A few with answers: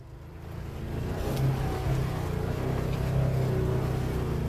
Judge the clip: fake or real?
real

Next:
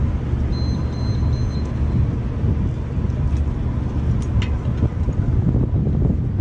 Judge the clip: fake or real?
real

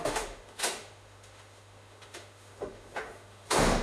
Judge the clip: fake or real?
fake